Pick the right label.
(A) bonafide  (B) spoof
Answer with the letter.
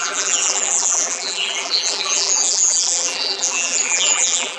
B